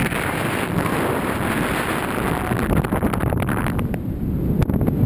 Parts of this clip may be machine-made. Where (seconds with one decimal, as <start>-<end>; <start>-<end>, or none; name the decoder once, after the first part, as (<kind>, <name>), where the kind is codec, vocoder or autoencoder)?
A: none

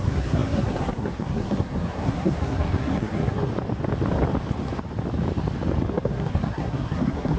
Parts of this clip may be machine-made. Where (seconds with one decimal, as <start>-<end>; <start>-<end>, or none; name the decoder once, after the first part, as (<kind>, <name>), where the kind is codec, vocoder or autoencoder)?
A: 0.0-3.5 (codec, SNAC); 5.9-7.4

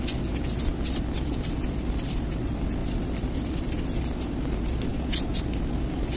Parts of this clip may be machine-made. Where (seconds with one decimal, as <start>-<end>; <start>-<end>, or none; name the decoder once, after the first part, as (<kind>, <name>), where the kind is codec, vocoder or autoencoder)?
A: none